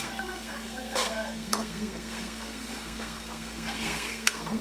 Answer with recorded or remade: remade